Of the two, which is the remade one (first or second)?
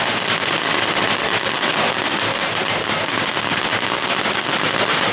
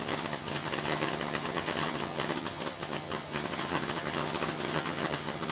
second